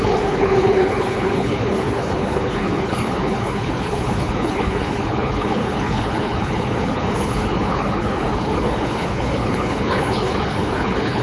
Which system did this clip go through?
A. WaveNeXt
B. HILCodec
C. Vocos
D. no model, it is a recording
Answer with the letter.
B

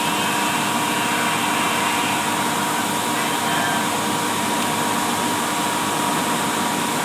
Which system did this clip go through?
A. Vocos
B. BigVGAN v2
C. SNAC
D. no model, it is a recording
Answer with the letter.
D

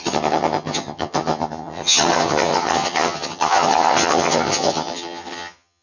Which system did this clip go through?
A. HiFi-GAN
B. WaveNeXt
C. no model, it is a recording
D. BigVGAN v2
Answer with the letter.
A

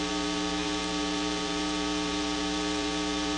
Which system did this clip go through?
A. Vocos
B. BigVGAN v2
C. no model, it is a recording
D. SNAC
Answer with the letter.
B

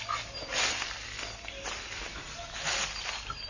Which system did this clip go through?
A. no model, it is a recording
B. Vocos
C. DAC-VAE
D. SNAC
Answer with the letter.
A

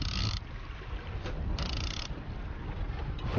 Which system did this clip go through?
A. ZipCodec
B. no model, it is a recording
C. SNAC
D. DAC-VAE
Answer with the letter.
B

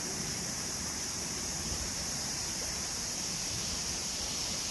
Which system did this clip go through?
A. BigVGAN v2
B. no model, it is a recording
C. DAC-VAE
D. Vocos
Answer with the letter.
A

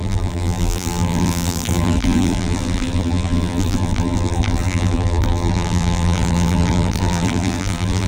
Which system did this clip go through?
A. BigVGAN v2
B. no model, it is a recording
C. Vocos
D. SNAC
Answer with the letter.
A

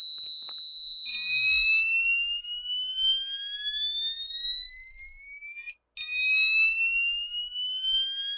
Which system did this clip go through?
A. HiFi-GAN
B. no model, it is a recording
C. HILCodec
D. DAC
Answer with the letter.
B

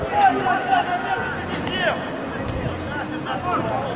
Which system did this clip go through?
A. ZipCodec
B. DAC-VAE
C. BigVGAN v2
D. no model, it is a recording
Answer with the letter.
D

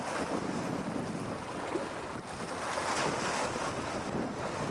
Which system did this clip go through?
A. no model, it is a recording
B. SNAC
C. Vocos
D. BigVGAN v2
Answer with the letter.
A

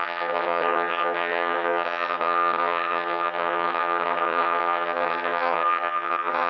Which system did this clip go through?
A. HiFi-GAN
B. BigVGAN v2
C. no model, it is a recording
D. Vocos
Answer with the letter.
A